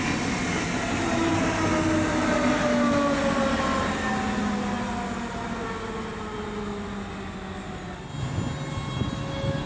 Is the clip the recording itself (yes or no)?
yes